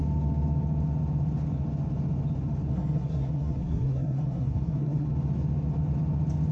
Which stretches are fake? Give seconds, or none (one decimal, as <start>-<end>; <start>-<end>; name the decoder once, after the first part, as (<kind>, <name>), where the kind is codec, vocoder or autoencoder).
2.7-5.1 (codec, SNAC)